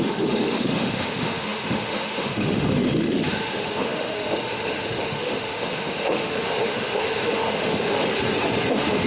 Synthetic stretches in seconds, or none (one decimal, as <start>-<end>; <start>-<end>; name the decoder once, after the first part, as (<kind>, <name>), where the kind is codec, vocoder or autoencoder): 0.0-8.0 (autoencoder, DAC-VAE); 8.7-9.1